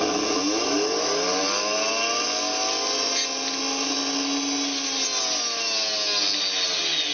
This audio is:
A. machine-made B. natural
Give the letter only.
B